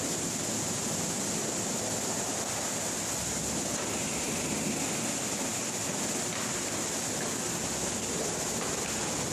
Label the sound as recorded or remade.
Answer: recorded